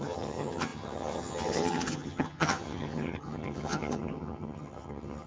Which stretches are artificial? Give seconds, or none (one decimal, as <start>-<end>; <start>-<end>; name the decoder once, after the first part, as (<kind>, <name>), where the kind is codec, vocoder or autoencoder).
0.0-5.3 (vocoder, HiFi-GAN)